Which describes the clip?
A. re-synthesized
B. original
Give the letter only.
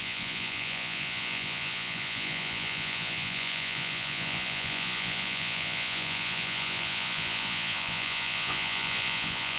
A